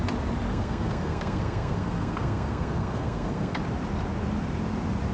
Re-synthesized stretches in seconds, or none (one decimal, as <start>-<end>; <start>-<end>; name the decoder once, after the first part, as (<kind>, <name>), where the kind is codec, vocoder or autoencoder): 0.5-3.6 (codec, SNAC)